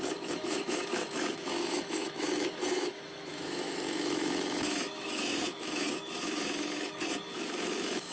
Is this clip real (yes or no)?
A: no